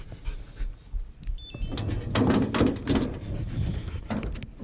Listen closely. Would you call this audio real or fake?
real